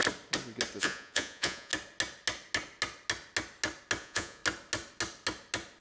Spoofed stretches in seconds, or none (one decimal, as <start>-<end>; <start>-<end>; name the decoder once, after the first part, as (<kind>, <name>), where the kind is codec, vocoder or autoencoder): 0.8-1.7 (vocoder, Vocos); 4.0-4.4